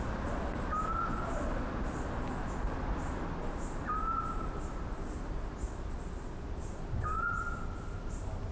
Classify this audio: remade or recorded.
recorded